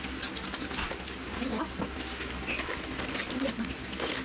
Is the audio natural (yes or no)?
yes